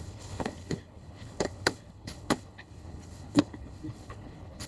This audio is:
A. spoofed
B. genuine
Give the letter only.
A